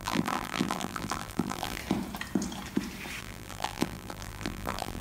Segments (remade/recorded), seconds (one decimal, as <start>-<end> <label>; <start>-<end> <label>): 0.0-1.8 remade; 1.8-3.2 recorded; 3.2-5.0 remade